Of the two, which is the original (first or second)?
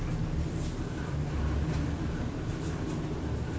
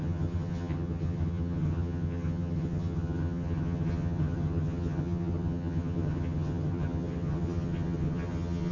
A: first